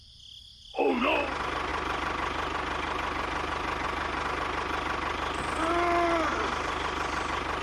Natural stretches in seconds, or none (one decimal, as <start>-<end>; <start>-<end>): 0.0-7.6